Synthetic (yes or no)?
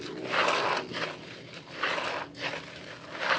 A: no